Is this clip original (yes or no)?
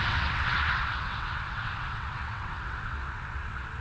no